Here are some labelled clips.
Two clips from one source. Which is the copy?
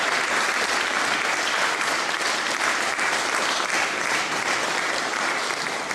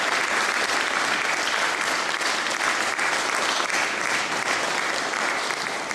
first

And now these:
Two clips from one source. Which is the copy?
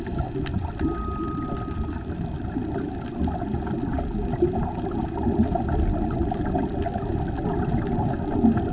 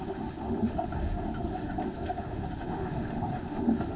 second